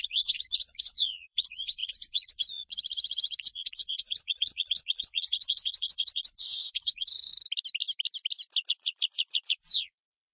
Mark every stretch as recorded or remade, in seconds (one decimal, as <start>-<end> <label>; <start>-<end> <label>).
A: 0.0-7.3 remade; 7.3-8.7 recorded; 8.7-10.3 remade